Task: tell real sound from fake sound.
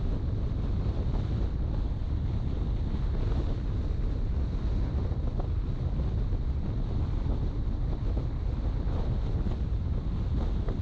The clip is real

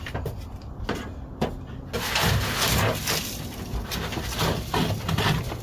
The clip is real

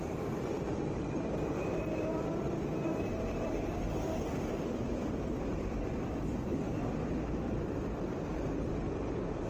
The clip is fake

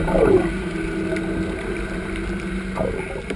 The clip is real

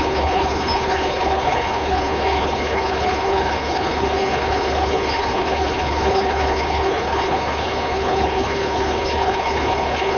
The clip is fake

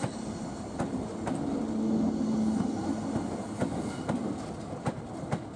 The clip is real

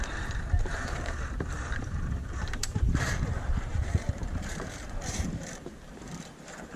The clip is fake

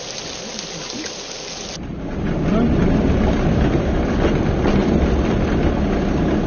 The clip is real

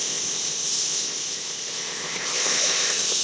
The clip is fake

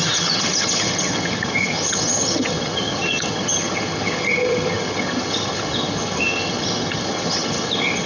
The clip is fake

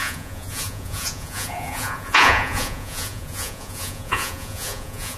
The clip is fake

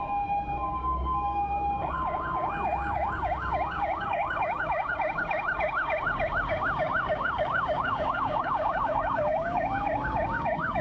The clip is fake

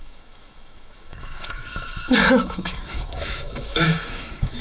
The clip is fake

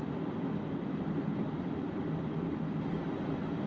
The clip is real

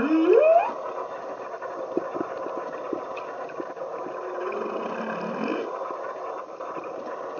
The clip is real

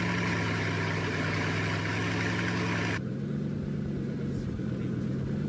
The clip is real